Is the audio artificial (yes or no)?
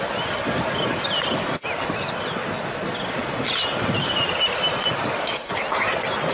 no